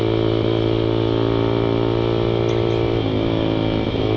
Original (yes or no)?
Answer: yes